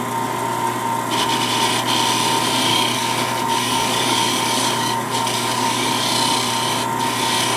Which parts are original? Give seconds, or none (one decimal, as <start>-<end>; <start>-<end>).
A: 0.0-2.7; 5.9-7.6